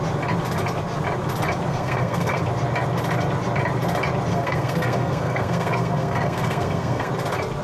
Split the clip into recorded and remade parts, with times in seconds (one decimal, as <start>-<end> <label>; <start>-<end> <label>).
0.0-1.7 recorded; 1.7-2.4 remade; 2.4-4.3 recorded; 4.3-7.1 remade; 7.1-7.6 recorded